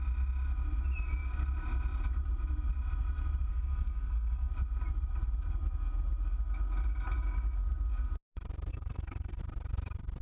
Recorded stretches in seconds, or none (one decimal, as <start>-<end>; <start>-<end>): 0.0-3.5; 4.5-8.7; 9.4-10.2